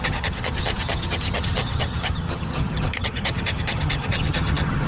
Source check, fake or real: fake